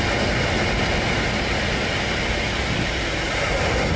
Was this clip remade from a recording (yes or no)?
no